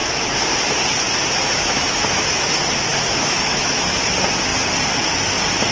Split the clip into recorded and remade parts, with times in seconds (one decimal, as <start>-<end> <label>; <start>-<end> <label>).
0.0-1.4 recorded; 1.4-2.5 remade; 2.5-2.9 recorded; 2.9-4.1 remade; 4.1-5.7 recorded